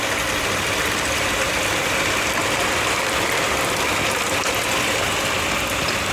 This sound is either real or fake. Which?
fake